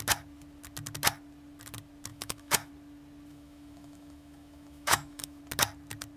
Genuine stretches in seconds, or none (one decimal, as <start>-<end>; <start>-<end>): 0.0-2.1; 2.7-3.3; 5.4-6.2